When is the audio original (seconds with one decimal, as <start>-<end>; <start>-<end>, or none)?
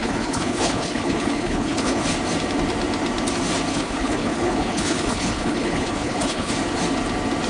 2.0-3.7; 6.5-7.5